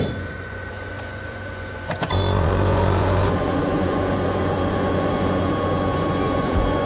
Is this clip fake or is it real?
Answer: fake